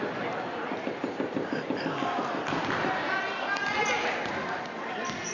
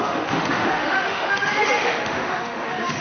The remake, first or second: second